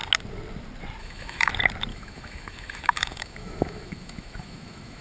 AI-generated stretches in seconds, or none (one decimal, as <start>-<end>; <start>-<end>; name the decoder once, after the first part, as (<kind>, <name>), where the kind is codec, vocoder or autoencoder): 1.0-1.5 (autoencoder, DAC-VAE); 1.9-5.0